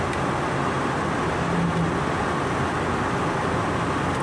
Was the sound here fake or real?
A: real